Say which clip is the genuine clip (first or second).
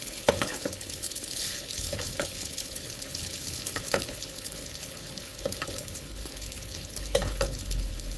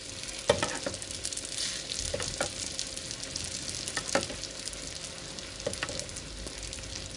second